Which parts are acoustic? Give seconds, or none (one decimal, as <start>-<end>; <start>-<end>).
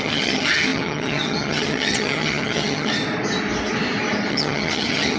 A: 2.9-4.3